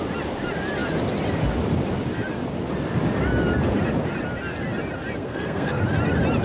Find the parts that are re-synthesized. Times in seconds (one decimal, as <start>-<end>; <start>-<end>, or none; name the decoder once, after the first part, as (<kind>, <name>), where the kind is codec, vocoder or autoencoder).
5.2-5.8 (codec, SNAC)

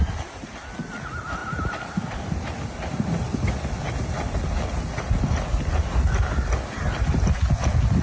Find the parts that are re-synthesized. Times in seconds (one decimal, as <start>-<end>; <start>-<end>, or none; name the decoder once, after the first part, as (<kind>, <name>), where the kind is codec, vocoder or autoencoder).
none

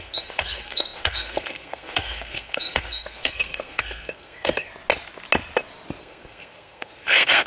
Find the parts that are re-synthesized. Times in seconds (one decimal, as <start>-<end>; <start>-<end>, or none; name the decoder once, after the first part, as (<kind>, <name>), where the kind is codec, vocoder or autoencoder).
0.0-4.7 (codec, SNAC); 6.0-7.5

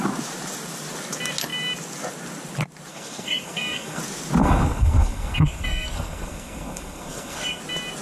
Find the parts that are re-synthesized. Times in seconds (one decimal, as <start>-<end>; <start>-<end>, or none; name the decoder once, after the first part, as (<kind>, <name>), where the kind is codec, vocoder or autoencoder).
2.9-4.0 (codec, SNAC); 4.4-7.6

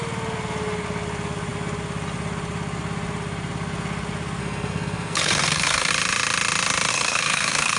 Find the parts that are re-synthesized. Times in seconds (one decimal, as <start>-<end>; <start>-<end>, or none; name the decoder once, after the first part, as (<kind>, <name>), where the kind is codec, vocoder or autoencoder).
4.4-5.9 (codec, SNAC); 6.9-7.8

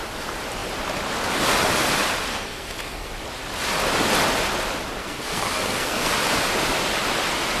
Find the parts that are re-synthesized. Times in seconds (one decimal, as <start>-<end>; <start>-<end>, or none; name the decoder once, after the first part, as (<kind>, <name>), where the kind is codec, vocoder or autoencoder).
2.3-3.1 (codec, SNAC); 5.0-6.1

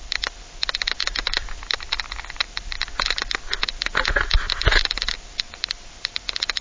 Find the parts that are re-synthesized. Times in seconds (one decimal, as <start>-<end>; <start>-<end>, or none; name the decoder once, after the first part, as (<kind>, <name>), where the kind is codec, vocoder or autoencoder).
none